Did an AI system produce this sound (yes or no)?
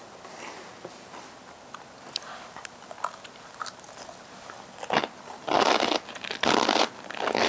no